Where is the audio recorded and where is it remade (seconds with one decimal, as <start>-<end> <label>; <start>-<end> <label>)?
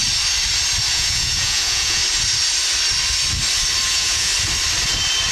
0.0-0.9 recorded; 0.9-2.0 remade; 2.0-3.9 recorded; 3.9-4.3 remade; 4.3-5.3 recorded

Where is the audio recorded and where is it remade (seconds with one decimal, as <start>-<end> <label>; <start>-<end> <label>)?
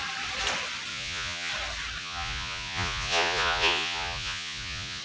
0.0-0.9 recorded; 0.9-1.5 remade; 1.5-2.0 recorded; 2.0-5.0 remade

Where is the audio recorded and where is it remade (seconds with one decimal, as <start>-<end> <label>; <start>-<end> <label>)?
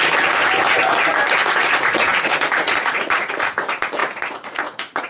0.0-1.4 recorded; 1.4-3.3 remade; 3.3-4.0 recorded; 4.0-5.1 remade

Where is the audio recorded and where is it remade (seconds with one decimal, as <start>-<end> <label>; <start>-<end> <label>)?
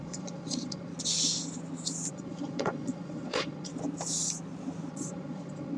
0.0-0.9 remade; 0.9-2.1 recorded; 2.1-3.7 remade; 3.7-4.9 recorded; 4.9-5.8 remade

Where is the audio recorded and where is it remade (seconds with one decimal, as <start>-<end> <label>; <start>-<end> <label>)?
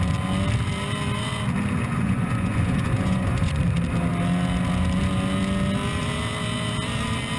0.0-1.8 recorded; 1.8-3.6 remade; 3.6-7.4 recorded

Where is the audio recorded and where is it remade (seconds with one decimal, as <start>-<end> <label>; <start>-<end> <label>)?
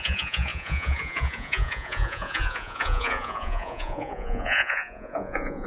0.0-5.7 remade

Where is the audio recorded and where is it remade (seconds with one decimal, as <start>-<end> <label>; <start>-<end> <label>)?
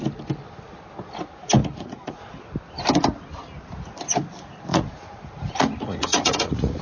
0.0-1.6 recorded; 1.6-2.2 remade; 2.2-4.7 recorded; 4.7-6.8 remade